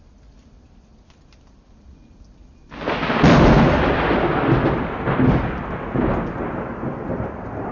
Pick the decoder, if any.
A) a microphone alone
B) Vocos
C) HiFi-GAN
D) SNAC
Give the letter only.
A